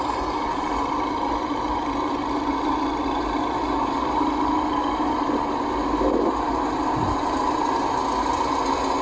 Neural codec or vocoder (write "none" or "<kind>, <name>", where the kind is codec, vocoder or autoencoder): none